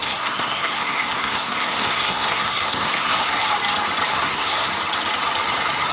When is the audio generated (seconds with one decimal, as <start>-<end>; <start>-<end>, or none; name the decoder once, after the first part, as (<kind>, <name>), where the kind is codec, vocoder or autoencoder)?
0.0-3.5 (codec, SNAC); 4.1-4.7